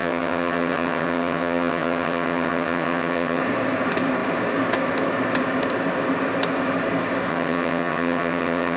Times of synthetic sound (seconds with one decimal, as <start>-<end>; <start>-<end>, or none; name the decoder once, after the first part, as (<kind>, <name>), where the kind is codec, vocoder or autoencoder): 0.0-3.4 (vocoder, HiFi-GAN); 7.3-8.8